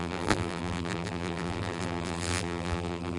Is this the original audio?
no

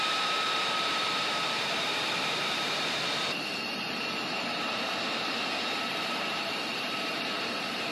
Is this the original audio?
no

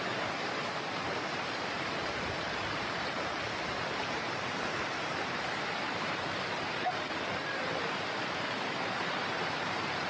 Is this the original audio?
no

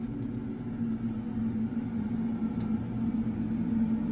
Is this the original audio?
yes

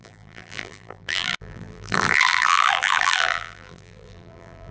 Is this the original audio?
no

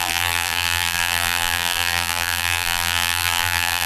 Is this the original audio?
no